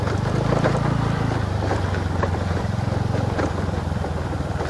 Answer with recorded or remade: remade